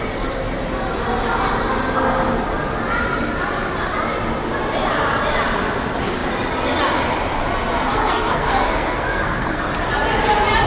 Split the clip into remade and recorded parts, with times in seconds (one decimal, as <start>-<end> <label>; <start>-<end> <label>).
0.0-7.9 recorded; 7.9-9.6 remade; 9.6-10.7 recorded